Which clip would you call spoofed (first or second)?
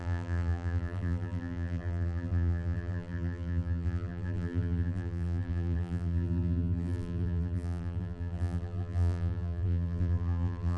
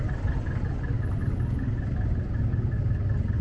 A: first